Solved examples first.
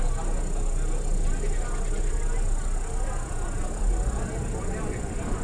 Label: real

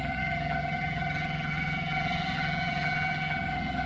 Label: fake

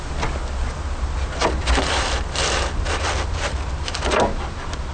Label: real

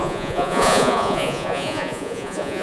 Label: fake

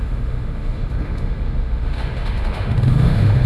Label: fake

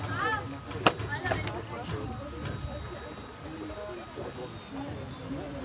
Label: real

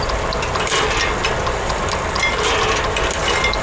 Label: real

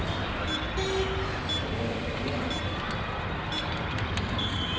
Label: real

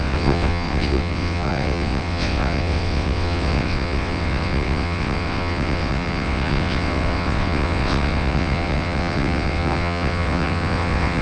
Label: fake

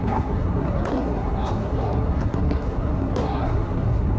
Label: fake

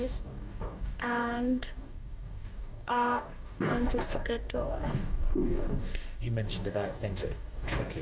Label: fake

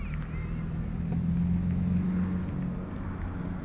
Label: real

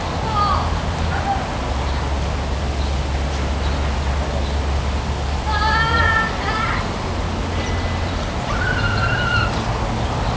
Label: real